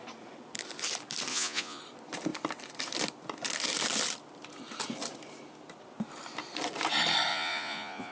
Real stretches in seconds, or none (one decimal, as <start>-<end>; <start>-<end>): 0.0-1.3; 1.8-7.3